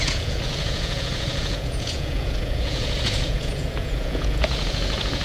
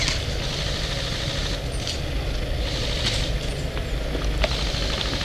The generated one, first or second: first